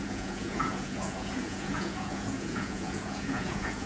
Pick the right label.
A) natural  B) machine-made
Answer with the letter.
B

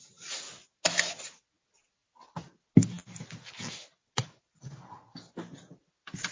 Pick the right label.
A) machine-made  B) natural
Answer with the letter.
B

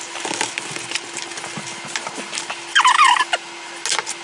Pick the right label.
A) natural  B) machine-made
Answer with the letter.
A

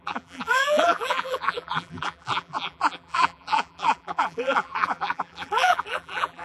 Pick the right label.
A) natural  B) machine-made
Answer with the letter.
B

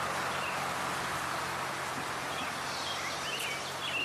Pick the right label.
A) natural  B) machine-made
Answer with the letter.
A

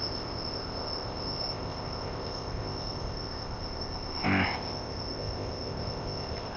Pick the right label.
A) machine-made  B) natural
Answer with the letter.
A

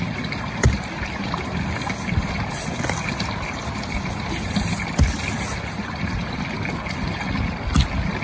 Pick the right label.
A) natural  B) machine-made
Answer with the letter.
A